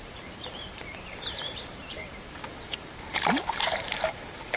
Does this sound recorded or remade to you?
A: remade